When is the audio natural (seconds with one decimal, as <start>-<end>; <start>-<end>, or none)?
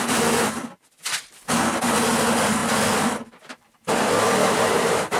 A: 0.0-2.6